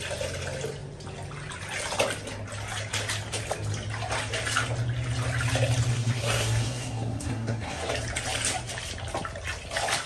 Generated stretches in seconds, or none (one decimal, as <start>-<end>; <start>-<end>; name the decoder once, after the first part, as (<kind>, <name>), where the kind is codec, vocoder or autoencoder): 5.9-7.9 (codec, SNAC)